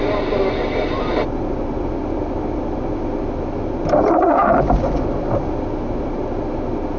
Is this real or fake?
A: real